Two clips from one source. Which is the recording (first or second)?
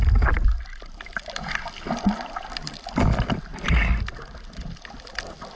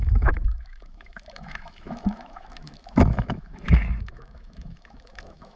first